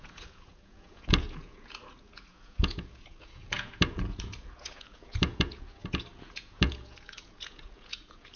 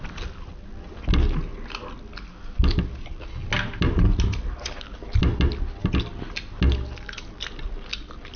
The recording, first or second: second